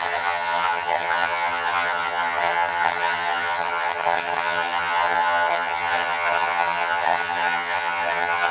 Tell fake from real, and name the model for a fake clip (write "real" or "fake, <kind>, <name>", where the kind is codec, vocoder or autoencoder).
fake, vocoder, HiFi-GAN